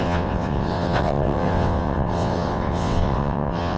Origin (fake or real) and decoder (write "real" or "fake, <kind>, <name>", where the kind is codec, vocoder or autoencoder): fake, vocoder, WaveNeXt